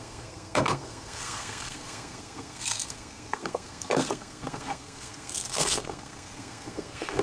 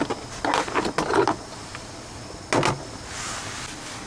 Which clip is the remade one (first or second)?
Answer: first